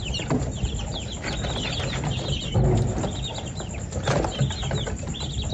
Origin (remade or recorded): recorded